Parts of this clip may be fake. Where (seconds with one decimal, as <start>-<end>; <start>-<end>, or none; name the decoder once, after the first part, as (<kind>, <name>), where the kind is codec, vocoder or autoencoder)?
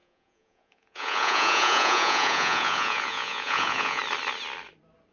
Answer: 0.0-4.0 (vocoder, Vocos)